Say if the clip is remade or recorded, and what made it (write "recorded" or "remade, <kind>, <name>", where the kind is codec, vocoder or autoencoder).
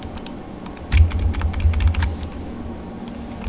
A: recorded